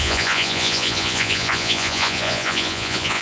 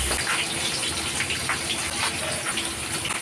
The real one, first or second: second